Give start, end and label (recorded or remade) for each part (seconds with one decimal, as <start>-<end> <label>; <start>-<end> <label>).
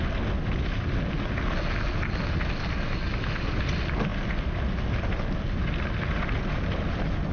0.0-7.3 recorded